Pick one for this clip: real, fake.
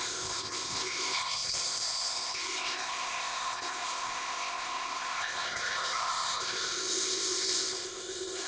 fake